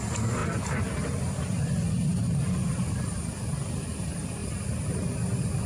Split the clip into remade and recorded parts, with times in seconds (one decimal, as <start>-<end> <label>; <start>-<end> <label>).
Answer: 0.0-5.7 recorded